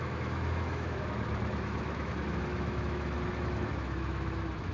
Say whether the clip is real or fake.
fake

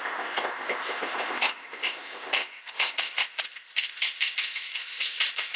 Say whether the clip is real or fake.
fake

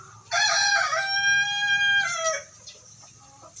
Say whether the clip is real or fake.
real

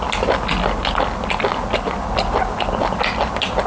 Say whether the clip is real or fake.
real